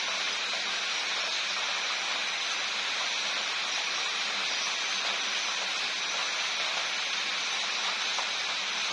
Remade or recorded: recorded